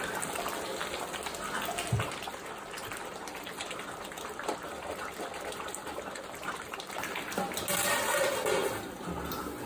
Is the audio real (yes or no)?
yes